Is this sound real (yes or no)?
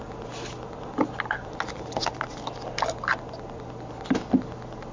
yes